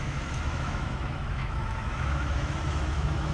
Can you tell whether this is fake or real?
fake